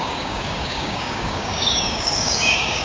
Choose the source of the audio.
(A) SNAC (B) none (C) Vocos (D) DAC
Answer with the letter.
D